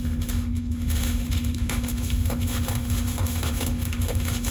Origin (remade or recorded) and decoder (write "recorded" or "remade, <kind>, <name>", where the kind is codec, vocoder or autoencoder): remade, autoencoder, DAC-VAE